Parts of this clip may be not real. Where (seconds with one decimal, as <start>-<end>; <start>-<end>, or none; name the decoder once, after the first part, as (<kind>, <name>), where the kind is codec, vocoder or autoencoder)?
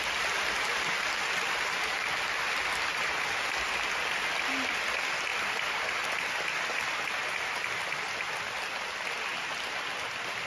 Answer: none